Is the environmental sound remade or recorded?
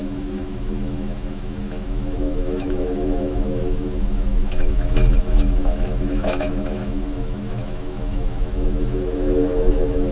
remade